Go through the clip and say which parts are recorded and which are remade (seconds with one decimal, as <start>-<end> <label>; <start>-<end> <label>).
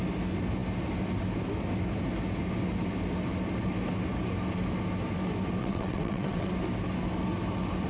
0.0-5.6 recorded; 5.6-6.5 remade; 6.5-7.9 recorded